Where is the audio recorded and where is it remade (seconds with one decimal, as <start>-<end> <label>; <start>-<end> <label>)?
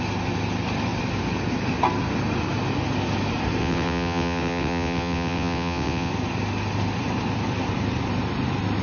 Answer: 0.0-3.6 recorded; 3.6-6.1 remade; 6.1-8.8 recorded